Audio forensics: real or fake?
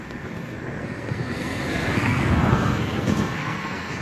fake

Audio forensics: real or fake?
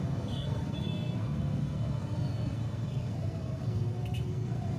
fake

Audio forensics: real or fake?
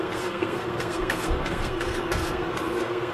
fake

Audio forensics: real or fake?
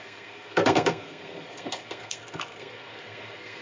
fake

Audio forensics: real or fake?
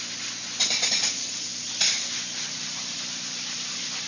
real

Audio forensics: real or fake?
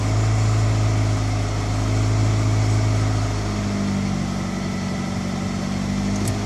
real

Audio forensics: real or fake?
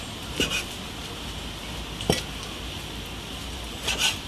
real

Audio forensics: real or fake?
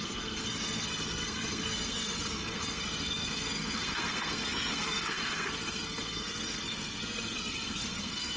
fake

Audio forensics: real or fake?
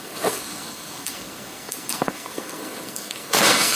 fake